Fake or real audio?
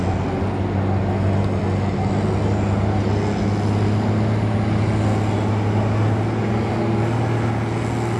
real